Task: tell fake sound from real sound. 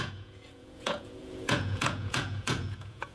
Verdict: fake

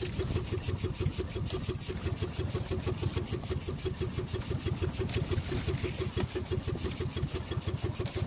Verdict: real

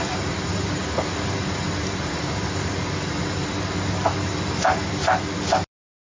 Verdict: real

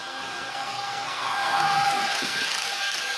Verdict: fake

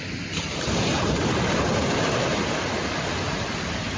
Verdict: real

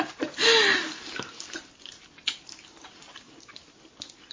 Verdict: real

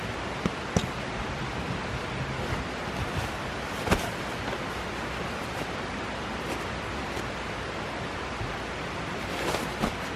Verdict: real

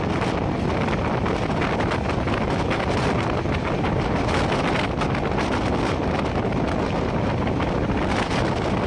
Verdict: real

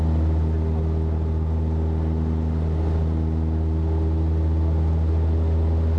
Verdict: real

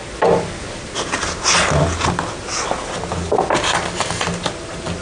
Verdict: real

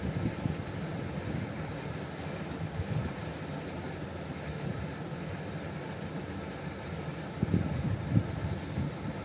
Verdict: real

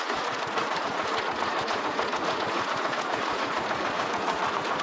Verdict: fake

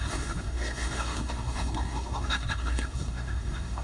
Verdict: fake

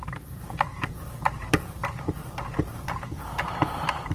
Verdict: fake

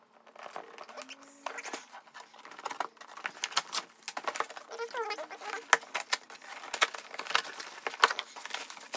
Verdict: real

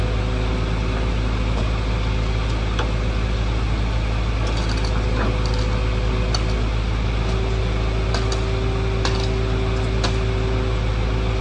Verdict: real